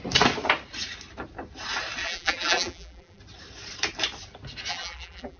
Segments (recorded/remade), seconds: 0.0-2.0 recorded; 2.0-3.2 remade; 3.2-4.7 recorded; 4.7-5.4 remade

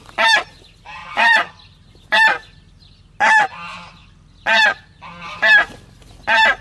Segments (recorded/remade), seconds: 0.0-1.0 recorded; 1.0-1.5 remade; 1.5-6.6 recorded

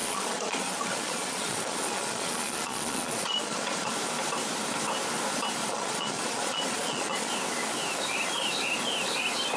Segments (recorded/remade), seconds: 0.0-3.9 remade; 3.9-5.6 recorded; 5.6-7.3 remade; 7.3-9.6 recorded

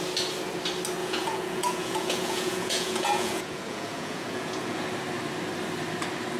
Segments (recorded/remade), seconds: 0.0-1.0 recorded; 1.0-4.8 remade; 4.8-6.4 recorded

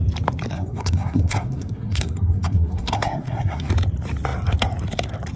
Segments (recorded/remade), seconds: 0.0-0.5 recorded; 0.5-3.7 remade; 3.7-5.4 recorded

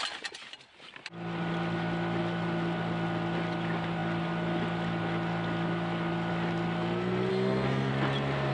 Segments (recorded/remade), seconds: 0.0-7.3 recorded; 7.3-7.9 remade; 7.9-8.5 recorded